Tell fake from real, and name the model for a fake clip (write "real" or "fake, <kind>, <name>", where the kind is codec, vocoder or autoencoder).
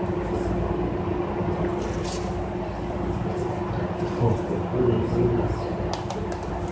real